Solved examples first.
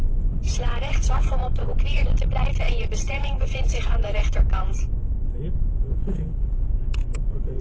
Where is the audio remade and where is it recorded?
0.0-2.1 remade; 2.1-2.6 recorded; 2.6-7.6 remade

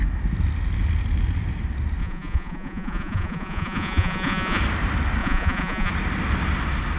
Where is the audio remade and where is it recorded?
0.0-2.0 recorded; 2.0-4.6 remade; 4.6-5.2 recorded; 5.2-5.9 remade; 5.9-7.0 recorded

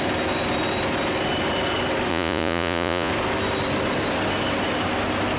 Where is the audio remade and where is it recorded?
0.0-2.1 recorded; 2.1-3.1 remade; 3.1-5.4 recorded